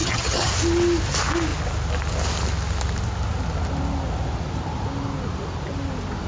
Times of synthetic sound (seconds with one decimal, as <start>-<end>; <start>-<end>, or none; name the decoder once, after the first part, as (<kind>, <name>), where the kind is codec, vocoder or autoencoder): 0.0-0.5 (vocoder, HiFi-GAN)

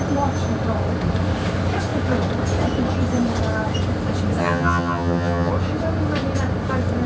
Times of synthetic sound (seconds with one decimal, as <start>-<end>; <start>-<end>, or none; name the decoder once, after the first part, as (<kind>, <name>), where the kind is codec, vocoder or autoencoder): 4.4-5.5 (vocoder, HiFi-GAN)

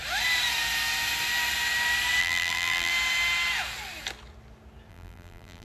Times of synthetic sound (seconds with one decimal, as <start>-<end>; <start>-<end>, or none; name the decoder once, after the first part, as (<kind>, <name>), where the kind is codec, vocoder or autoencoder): 2.2-2.9 (vocoder, BigVGAN v2); 4.9-5.6

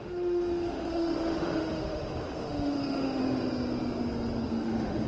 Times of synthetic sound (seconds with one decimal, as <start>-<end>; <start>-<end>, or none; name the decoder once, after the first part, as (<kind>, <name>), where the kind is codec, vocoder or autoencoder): 0.0-3.2 (autoencoder, DAC-VAE); 4.5-5.1

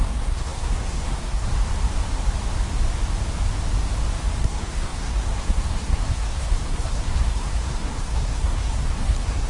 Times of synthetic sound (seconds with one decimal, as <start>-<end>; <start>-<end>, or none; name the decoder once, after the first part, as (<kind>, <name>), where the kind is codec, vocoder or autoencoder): 0.0-1.5 (codec, SNAC); 4.4-9.5

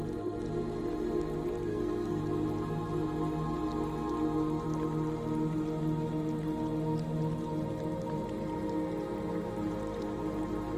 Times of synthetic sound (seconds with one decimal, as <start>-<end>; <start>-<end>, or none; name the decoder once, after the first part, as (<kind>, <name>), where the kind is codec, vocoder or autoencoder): 1.7-2.2 (codec, SNAC)